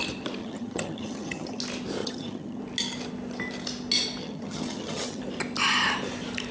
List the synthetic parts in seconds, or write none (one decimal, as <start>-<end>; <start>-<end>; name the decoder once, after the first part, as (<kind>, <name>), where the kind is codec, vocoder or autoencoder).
0.4-1.6 (vocoder, HiFi-GAN); 2.0-2.6; 4.2-5.2